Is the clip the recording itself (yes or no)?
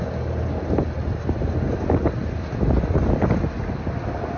yes